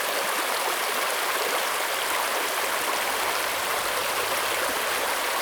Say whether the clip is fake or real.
real